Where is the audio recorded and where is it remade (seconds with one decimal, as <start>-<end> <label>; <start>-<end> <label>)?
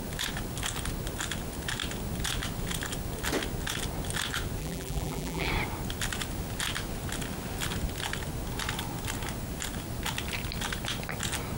0.0-4.6 recorded; 4.6-5.5 remade; 5.5-11.6 recorded